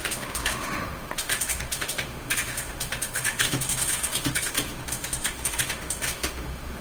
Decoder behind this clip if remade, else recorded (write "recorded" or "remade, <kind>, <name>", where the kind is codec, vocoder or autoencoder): remade, autoencoder, DAC-VAE